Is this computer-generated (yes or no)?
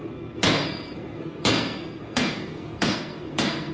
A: yes